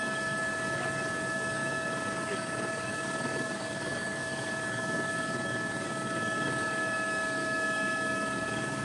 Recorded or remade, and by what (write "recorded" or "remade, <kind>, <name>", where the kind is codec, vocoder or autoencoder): remade, codec, DAC